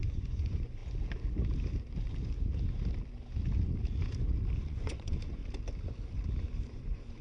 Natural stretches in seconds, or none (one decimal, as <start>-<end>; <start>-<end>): 0.8-4.6; 5.4-6.7